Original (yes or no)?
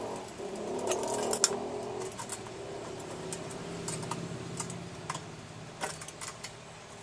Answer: yes